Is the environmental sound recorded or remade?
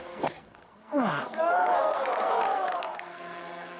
remade